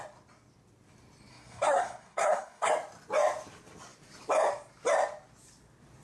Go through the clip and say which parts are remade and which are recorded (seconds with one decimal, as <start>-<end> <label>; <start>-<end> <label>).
0.0-1.3 recorded; 1.3-2.7 remade; 2.7-6.0 recorded